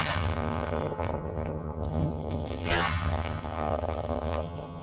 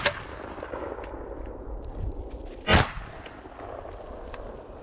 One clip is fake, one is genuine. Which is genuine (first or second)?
second